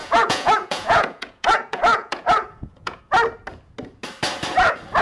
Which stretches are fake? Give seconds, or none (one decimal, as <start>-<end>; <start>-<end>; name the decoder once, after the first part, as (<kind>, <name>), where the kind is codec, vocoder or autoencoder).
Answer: 0.0-3.0 (vocoder, Vocos)